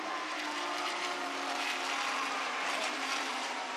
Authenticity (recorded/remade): remade